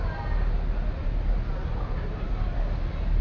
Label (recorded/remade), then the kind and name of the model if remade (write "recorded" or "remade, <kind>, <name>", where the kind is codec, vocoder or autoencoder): recorded